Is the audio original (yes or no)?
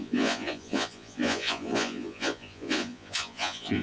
no